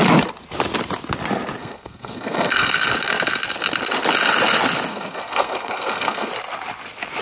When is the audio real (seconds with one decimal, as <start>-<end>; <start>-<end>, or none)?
0.0-1.6; 2.9-4.9; 6.3-7.2